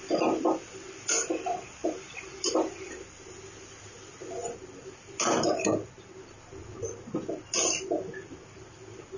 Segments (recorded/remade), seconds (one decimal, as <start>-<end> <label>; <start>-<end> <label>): 0.0-1.8 recorded; 1.8-2.7 remade; 2.7-9.2 recorded

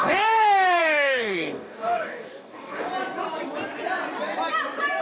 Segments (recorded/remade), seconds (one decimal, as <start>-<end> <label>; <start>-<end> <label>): 0.0-2.9 remade; 2.9-5.0 recorded

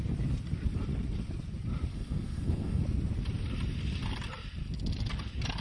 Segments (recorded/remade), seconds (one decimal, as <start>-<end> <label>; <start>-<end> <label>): 0.0-1.9 recorded; 1.9-2.8 remade; 2.8-5.6 recorded

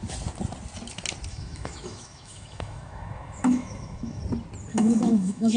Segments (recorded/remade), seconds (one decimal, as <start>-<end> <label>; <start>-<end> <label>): 0.0-1.3 recorded; 1.3-4.2 remade; 4.2-4.7 recorded; 4.7-5.6 remade